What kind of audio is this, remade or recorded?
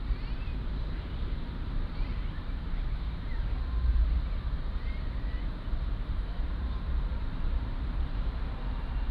remade